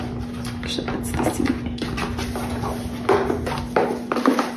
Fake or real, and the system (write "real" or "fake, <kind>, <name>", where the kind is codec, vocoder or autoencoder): real